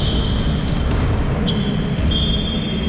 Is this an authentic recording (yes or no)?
yes